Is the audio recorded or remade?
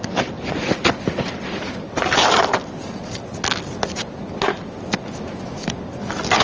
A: recorded